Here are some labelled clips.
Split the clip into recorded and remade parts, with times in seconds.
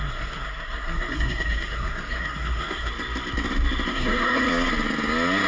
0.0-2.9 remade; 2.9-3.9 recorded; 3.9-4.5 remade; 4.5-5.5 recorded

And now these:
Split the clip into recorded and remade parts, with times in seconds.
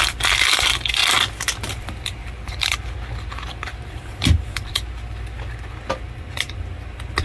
0.0-7.2 recorded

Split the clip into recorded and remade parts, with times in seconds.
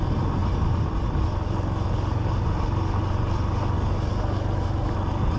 0.0-5.4 recorded